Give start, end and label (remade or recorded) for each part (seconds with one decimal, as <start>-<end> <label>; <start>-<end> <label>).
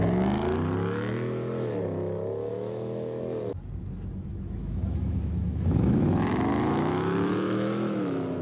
0.0-2.5 recorded; 2.5-3.2 remade; 3.2-4.3 recorded; 4.3-8.4 remade